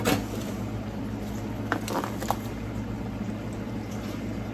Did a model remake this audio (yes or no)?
no